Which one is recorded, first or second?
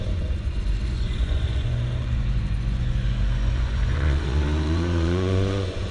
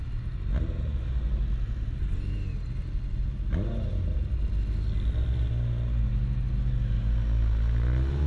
second